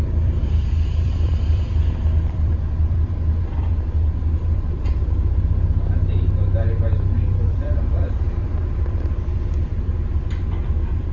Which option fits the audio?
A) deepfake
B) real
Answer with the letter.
A